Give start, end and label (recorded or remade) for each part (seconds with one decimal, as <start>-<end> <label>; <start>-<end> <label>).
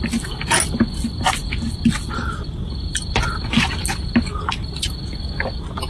0.0-5.9 recorded